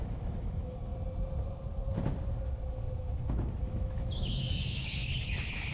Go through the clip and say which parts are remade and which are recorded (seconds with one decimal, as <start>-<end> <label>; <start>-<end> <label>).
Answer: 0.0-0.9 remade; 0.9-3.5 recorded; 3.5-5.0 remade; 5.0-5.7 recorded